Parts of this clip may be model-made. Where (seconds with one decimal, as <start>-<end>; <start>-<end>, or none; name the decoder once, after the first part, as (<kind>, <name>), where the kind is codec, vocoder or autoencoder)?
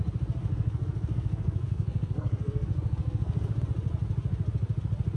0.4-3.5 (codec, SNAC)